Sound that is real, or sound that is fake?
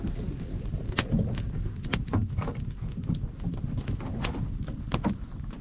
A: real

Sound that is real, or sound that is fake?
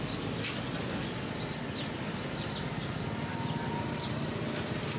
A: real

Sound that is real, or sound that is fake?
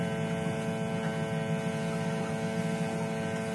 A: real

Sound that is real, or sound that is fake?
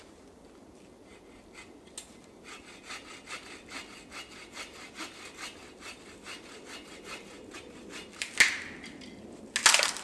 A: real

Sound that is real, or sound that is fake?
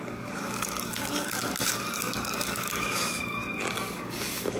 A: fake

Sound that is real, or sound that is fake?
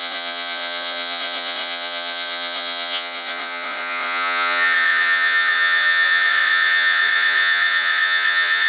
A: fake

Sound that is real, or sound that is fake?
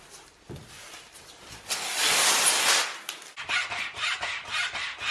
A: real